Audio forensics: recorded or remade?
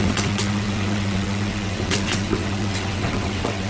remade